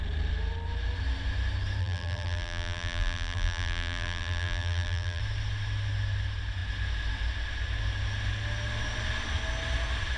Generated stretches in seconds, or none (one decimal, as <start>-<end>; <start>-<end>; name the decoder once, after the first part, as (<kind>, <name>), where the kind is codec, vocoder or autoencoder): 1.8-5.2 (vocoder, BigVGAN v2)